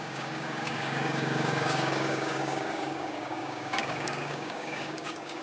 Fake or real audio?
fake